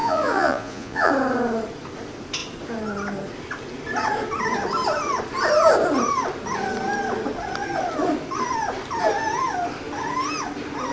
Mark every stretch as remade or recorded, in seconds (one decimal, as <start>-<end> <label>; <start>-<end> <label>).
0.0-1.1 remade; 1.1-10.9 recorded